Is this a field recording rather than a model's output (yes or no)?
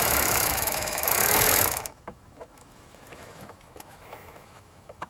no